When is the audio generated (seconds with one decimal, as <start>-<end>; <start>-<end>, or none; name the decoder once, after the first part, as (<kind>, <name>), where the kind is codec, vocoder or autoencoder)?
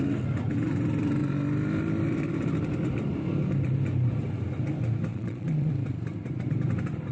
5.1-5.7 (vocoder, Vocos)